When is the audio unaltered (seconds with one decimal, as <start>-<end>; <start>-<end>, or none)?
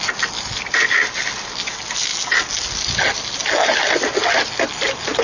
0.0-5.2